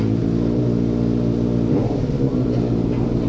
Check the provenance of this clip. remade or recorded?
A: recorded